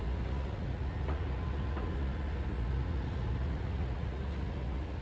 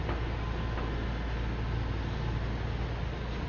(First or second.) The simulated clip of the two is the first